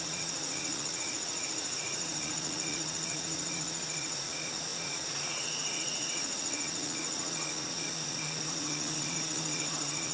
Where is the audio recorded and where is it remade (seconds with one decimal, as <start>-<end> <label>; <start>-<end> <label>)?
0.0-10.1 remade